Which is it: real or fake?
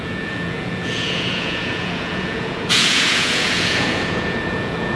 fake